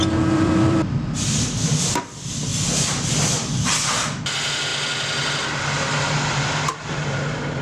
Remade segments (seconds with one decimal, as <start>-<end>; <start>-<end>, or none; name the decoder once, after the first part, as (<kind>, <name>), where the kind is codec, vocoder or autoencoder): 0.0-4.7 (vocoder, BigVGAN v2); 6.2-7.6